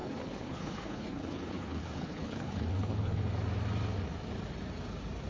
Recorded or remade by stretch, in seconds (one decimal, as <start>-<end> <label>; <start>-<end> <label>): 0.0-3.2 remade; 3.2-5.3 recorded